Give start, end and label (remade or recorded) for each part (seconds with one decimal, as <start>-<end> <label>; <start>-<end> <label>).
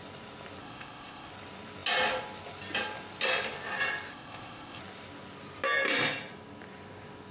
0.0-0.6 recorded; 0.6-1.3 remade; 1.3-4.1 recorded; 4.1-4.8 remade; 4.8-7.3 recorded